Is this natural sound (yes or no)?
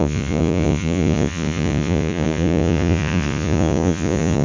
no